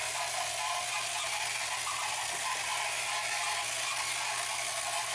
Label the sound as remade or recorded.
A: recorded